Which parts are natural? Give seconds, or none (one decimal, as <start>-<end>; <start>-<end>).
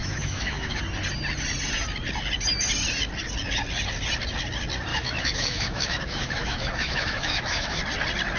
0.8-4.9; 7.8-8.4